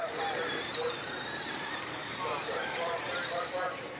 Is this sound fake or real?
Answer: fake